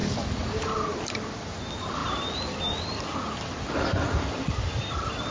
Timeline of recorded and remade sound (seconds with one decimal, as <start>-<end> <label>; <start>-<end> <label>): 0.0-5.3 recorded

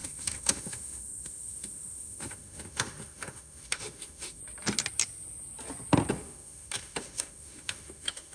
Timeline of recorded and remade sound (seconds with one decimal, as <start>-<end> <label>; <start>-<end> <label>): 0.0-4.4 remade; 4.4-6.1 recorded; 6.1-8.3 remade

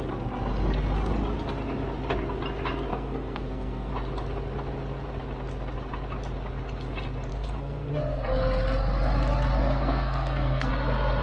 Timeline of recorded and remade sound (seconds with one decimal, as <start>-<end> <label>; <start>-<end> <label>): 0.0-2.9 recorded; 2.9-3.9 remade; 3.9-7.3 recorded; 7.3-7.9 remade; 7.9-9.6 recorded; 9.6-10.7 remade; 10.7-11.2 recorded

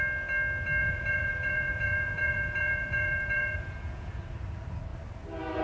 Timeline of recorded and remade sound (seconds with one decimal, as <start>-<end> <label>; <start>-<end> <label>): 0.0-0.8 recorded; 0.8-4.2 remade; 4.2-5.6 recorded

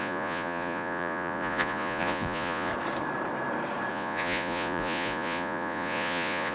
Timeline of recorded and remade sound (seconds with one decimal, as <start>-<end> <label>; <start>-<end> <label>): 0.0-2.7 remade; 2.7-3.9 recorded; 3.9-6.5 remade

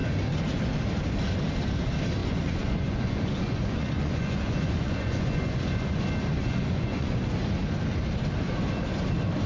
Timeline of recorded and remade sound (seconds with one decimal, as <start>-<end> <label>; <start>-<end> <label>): 0.0-2.2 recorded; 2.2-6.0 remade; 6.0-6.4 recorded; 6.4-7.2 remade; 7.2-9.5 recorded